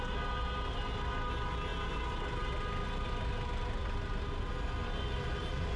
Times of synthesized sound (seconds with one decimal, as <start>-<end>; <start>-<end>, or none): none